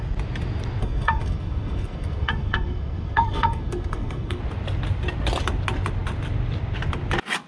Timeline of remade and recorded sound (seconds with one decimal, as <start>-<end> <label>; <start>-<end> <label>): 0.0-0.8 recorded; 0.8-4.4 remade; 4.4-7.5 recorded